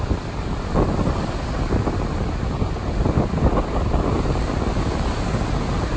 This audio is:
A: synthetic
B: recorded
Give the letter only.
B